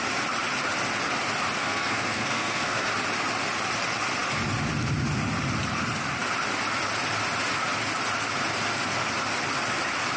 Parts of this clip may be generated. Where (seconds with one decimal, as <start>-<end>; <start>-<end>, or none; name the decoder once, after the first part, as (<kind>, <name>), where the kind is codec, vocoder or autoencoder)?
1.6-2.9 (codec, SNAC)